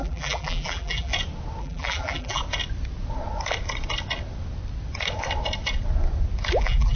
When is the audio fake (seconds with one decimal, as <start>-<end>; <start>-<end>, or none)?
0.0-1.1; 1.6-2.4; 6.6-7.0

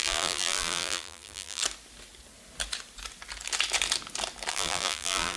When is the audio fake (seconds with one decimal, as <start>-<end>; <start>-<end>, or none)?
0.0-1.6; 4.5-5.4